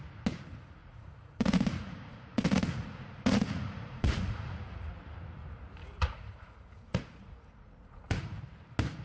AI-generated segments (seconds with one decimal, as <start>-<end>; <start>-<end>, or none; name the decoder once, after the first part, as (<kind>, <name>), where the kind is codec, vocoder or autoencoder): 0.8-4.9 (vocoder, Vocos); 5.8-8.4

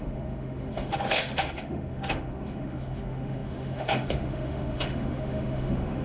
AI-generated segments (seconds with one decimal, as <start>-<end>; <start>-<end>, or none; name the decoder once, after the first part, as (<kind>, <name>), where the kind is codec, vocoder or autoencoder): 0.0-6.0 (autoencoder, DAC-VAE)

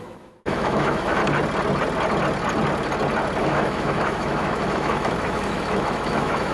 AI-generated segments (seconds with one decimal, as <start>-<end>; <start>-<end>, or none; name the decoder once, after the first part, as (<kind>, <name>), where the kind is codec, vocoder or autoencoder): 0.0-1.2 (autoencoder, DAC-VAE); 3.4-6.5

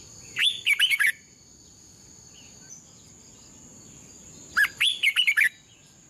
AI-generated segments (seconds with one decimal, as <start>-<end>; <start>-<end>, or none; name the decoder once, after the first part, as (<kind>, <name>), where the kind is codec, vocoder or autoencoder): 0.4-1.5 (vocoder, BigVGAN v2); 3.7-5.2

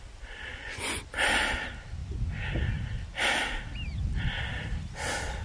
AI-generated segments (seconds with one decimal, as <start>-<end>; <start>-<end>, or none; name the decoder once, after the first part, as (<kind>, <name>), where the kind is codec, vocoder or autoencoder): 0.5-1.1 (vocoder, Vocos)

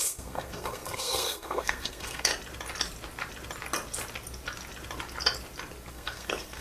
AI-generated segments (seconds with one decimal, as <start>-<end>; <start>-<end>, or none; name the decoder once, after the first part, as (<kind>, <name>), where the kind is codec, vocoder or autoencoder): 0.0-2.3 (codec, SNAC); 5.9-6.6